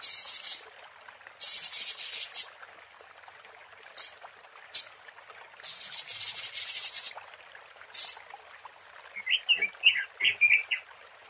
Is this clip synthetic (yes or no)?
no